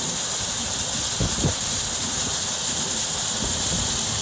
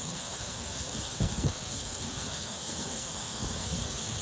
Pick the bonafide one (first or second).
first